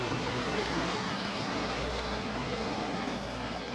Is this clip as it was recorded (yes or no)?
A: no